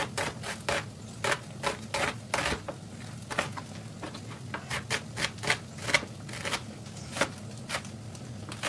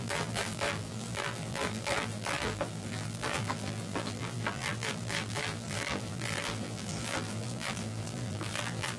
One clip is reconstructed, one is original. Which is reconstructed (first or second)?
second